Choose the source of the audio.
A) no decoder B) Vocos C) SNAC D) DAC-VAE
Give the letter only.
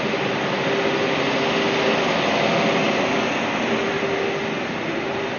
A